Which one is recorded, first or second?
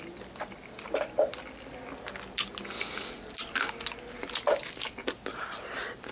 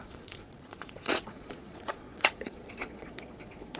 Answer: first